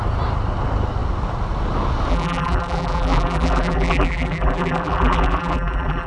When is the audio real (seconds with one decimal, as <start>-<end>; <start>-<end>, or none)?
0.0-2.1